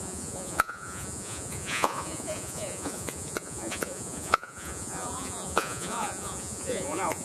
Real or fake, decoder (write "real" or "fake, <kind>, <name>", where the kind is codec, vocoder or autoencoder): fake, vocoder, Vocos